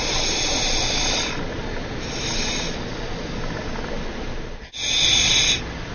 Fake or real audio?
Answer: real